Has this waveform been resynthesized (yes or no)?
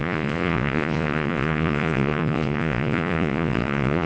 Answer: yes